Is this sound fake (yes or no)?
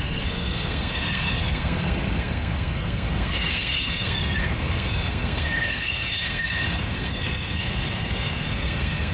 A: yes